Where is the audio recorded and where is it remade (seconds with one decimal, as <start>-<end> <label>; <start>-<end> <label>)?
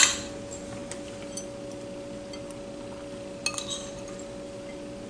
0.0-5.1 recorded